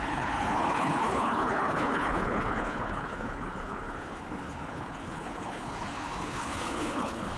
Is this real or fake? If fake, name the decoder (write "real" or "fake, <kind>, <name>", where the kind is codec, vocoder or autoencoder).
fake, codec, HILCodec